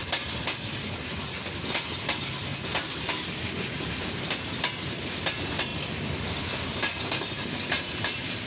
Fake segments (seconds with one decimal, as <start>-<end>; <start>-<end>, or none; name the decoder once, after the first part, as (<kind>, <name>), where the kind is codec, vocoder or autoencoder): none